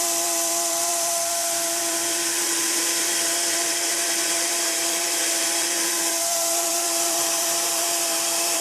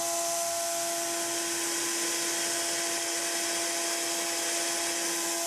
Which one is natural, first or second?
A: second